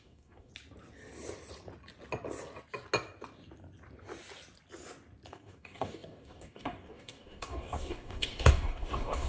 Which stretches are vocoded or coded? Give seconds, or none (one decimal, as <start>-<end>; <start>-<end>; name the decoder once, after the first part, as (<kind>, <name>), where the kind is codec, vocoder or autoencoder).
0.0-0.5 (codec, DAC); 5.3-9.3